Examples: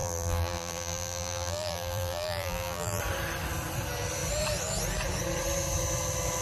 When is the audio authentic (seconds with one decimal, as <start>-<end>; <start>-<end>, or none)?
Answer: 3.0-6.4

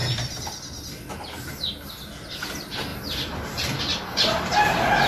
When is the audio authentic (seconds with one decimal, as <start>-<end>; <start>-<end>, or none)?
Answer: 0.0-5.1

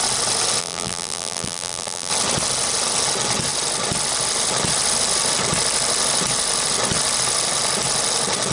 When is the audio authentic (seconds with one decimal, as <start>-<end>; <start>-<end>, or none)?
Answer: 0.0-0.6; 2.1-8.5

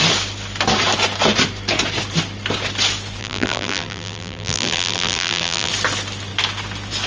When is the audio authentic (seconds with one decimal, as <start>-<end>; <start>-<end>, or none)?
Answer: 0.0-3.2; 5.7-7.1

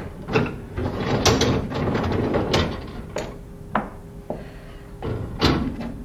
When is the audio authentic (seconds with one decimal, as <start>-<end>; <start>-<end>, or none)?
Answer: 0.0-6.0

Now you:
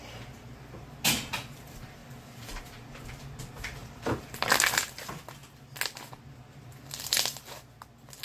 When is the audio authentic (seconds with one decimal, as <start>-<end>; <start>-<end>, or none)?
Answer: 0.0-2.0; 2.6-3.8; 4.5-8.2